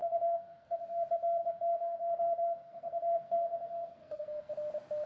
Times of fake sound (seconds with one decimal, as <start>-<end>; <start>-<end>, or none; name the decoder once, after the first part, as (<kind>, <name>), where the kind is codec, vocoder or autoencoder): 0.0-0.8 (codec, SNAC); 1.4-4.5